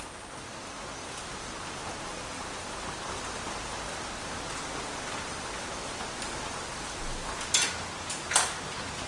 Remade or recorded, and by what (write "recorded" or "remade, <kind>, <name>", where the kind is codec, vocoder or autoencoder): recorded